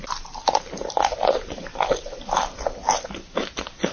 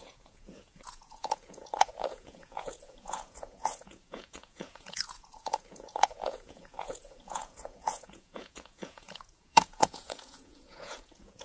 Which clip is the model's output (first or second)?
second